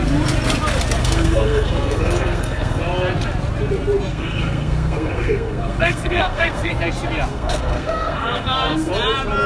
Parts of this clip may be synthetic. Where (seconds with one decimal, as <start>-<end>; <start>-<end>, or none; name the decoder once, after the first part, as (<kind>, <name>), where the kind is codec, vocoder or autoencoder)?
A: 1.0-2.8 (codec, SNAC); 4.1-6.7; 7.3-8.9